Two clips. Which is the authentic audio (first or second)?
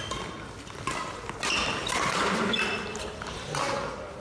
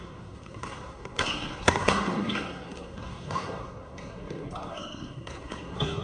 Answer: first